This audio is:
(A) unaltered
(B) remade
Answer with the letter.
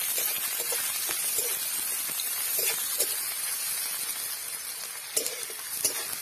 A